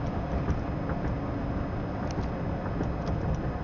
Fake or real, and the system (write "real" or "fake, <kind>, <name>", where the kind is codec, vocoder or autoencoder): real